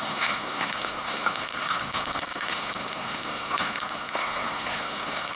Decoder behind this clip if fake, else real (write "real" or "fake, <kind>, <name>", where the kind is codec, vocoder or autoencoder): fake, codec, SNAC